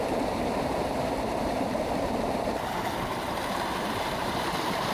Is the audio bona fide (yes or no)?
no